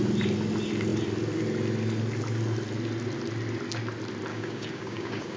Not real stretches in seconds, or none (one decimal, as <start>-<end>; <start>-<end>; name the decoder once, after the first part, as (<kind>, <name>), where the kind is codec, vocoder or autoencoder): 4.3-5.4 (codec, DAC)